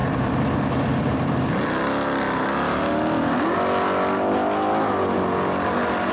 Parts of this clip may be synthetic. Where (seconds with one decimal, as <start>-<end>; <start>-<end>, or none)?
0.0-1.5